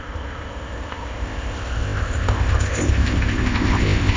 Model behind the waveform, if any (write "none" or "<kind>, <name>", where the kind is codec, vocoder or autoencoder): codec, ZipCodec